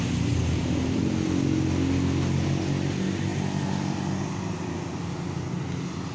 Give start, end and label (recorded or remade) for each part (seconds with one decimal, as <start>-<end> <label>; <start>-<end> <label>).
0.0-6.1 recorded